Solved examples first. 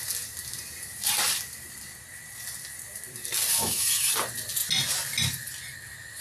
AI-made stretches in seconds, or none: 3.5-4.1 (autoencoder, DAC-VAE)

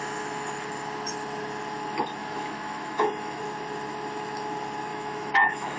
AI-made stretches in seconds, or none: 2.2-3.4 (autoencoder, DAC-VAE); 4.9-5.8

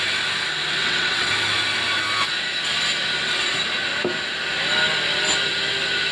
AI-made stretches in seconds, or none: 0.8-1.3 (vocoder, WaveNeXt)

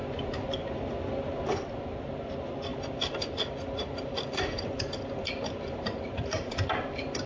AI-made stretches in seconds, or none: 2.7-6.5 (vocoder, BigVGAN v2)

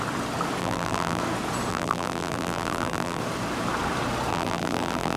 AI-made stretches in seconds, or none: 0.6-1.2 (vocoder, BigVGAN v2); 1.7-3.2; 4.3-5.2

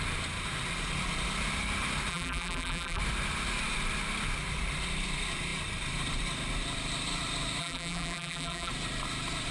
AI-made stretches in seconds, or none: 2.1-3.0 (vocoder, BigVGAN v2); 7.6-8.7